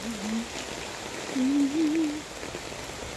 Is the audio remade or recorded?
recorded